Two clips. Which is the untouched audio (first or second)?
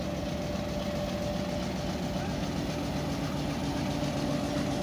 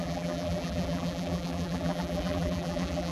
first